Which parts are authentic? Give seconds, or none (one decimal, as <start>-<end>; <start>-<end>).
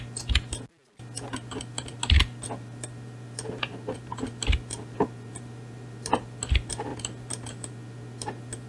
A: 0.0-8.7